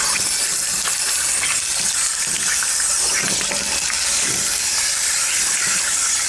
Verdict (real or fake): real